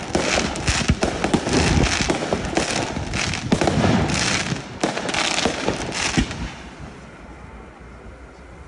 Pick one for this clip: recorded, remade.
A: recorded